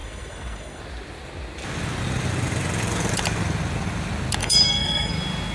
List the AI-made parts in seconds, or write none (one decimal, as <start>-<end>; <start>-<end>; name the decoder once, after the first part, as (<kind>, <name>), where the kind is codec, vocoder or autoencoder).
0.0-0.8 (codec, SNAC); 4.4-5.1